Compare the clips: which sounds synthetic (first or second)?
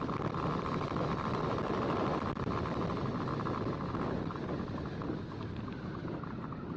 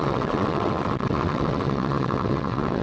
second